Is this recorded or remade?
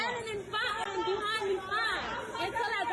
recorded